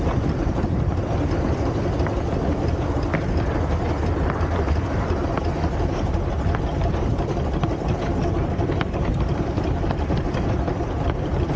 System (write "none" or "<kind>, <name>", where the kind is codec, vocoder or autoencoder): none